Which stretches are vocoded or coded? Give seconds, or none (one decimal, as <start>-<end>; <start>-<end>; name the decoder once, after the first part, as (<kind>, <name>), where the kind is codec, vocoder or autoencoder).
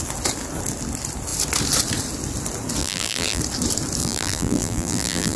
2.8-3.4 (vocoder, BigVGAN v2); 4.0-5.4